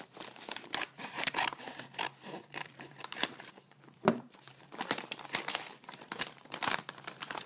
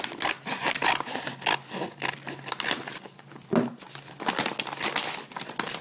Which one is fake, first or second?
first